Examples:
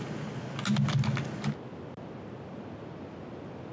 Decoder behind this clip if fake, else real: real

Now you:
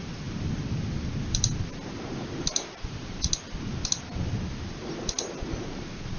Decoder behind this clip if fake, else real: real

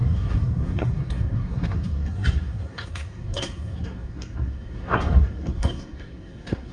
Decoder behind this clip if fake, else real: fake, codec, SNAC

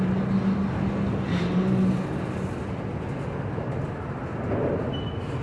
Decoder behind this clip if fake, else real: real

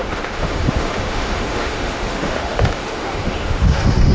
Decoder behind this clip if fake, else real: fake, autoencoder, DAC-VAE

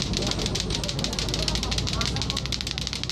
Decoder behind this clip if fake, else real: real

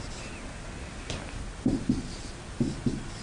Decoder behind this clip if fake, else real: real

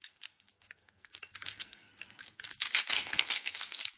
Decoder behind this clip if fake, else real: fake, codec, SNAC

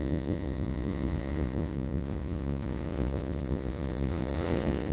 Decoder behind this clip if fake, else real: fake, vocoder, Vocos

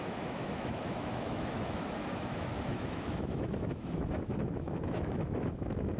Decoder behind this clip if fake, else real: fake, autoencoder, DAC-VAE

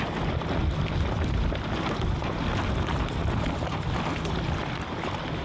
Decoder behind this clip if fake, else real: real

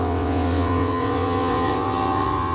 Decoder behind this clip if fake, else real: fake, vocoder, WaveNeXt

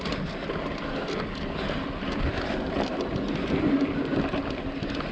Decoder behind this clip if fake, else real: real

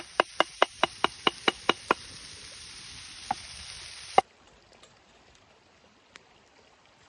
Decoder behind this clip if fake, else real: fake, vocoder, BigVGAN v2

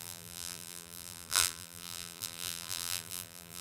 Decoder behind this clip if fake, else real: fake, vocoder, BigVGAN v2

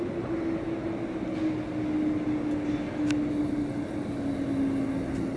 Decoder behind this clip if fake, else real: real